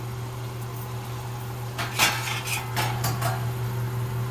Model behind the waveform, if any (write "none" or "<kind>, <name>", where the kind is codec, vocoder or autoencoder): none